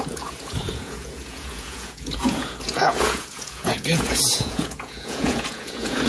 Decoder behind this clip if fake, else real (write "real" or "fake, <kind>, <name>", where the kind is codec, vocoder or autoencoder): fake, vocoder, Vocos